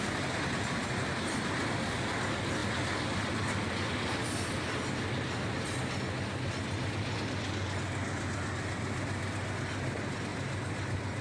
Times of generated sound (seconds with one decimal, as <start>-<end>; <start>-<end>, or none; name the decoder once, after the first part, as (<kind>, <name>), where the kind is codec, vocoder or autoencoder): none

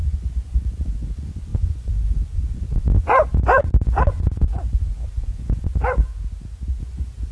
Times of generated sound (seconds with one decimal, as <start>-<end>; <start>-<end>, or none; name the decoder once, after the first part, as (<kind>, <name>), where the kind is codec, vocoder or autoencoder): 0.0-6.1 (vocoder, Vocos); 6.8-7.3